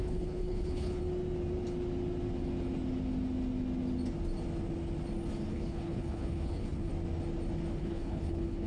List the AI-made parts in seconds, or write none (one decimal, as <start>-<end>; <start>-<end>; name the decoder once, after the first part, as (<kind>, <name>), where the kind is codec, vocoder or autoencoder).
0.0-1.0 (codec, HILCodec); 5.5-6.9; 7.8-8.7